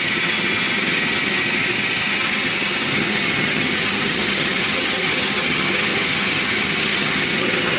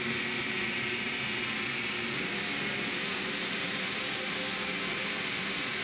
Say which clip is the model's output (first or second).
first